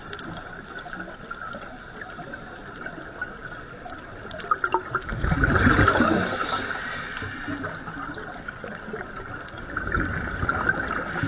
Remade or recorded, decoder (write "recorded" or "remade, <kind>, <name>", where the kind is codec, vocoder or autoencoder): recorded